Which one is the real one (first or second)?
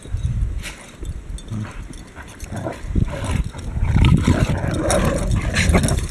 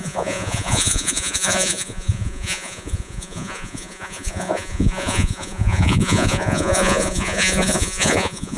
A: first